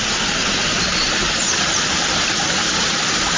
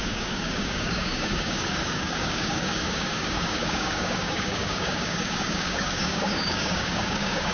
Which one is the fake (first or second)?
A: second